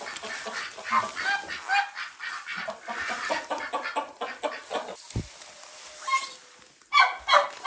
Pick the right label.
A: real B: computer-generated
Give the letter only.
A